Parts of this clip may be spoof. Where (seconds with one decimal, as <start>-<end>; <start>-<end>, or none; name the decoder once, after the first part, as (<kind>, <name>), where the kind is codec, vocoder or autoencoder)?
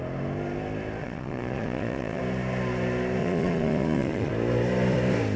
1.0-2.2 (vocoder, Vocos); 3.2-4.3